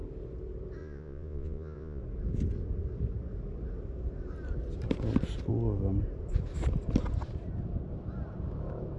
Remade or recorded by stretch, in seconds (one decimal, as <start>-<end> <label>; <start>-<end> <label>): 0.0-0.8 recorded; 0.8-2.0 remade; 2.0-9.0 recorded